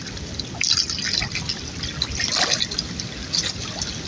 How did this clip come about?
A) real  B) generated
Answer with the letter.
A